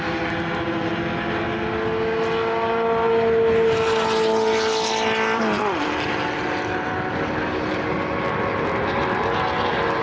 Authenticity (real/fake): real